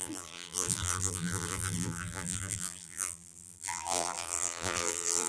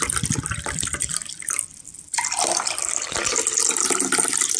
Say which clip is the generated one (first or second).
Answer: first